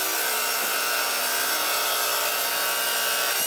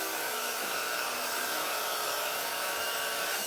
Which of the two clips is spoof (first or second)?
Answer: second